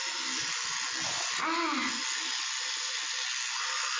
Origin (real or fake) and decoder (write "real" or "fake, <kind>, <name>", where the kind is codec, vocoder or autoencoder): real